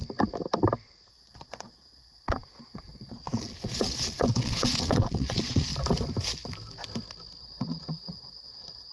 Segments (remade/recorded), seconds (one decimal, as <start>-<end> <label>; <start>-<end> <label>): 0.0-1.1 recorded; 1.1-5.7 remade; 5.7-7.4 recorded; 7.4-8.9 remade